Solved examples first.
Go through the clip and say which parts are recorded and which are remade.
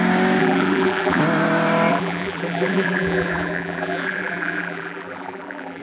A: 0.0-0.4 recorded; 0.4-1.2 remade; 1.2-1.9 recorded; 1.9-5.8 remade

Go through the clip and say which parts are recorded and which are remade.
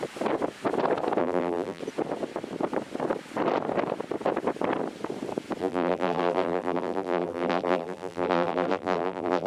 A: 0.0-1.2 recorded; 1.2-1.8 remade; 1.8-5.6 recorded; 5.6-9.5 remade